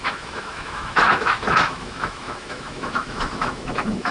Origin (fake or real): fake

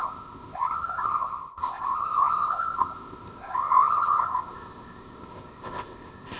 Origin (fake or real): fake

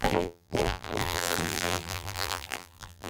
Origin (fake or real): fake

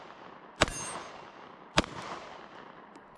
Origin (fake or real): real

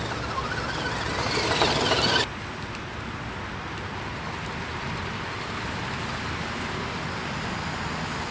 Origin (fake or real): real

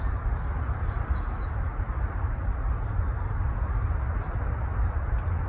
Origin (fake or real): real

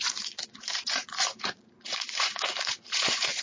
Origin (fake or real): fake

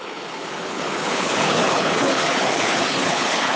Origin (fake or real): fake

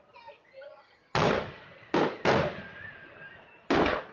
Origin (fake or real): real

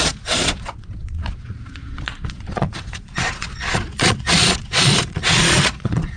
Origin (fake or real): fake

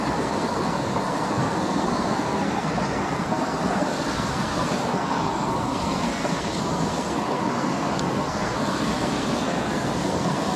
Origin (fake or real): fake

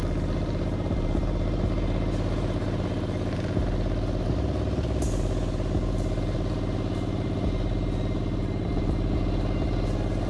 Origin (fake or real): real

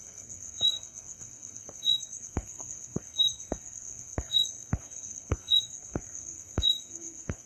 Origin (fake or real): fake